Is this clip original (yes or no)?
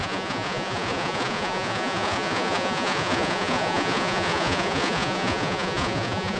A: no